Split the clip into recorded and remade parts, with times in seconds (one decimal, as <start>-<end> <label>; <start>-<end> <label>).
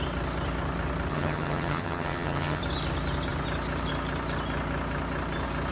0.0-1.1 recorded; 1.1-2.6 remade; 2.6-5.7 recorded